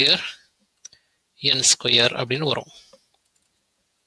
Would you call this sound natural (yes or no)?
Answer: no